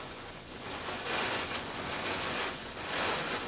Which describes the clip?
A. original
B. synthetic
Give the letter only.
B